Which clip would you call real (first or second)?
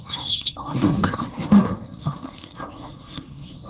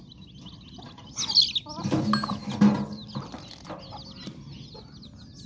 second